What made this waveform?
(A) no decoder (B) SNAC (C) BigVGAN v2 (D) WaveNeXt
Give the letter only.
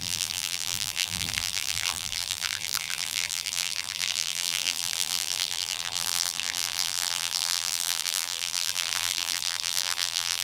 C